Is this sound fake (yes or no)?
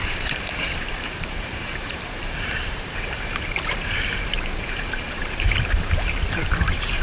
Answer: yes